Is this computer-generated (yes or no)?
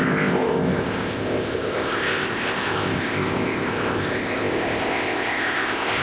yes